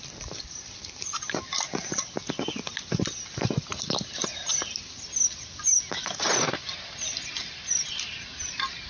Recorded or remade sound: recorded